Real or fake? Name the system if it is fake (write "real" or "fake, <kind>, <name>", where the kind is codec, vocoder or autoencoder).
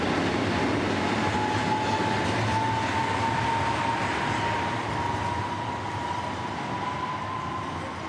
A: real